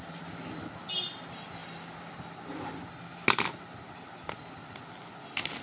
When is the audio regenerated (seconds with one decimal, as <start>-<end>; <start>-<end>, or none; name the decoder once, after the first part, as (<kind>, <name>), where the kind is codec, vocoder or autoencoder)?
none